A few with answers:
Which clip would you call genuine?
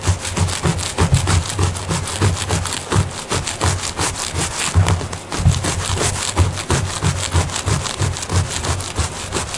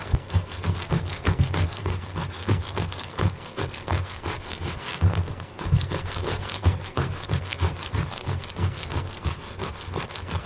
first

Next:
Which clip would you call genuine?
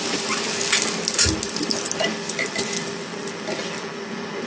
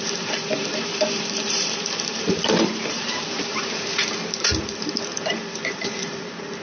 first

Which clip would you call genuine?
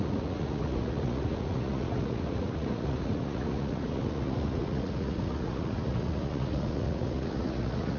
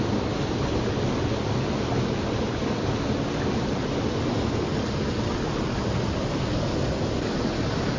second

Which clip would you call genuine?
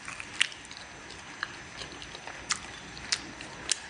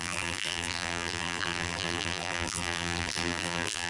first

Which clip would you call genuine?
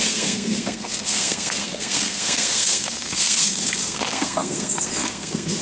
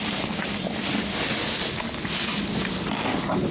second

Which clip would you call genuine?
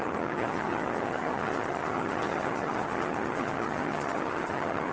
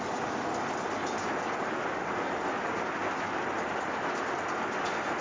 second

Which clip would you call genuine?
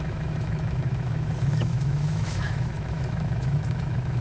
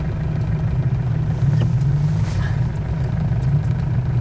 second